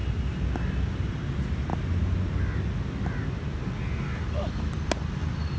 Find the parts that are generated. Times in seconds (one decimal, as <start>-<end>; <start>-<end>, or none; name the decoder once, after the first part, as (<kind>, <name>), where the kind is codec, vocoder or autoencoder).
none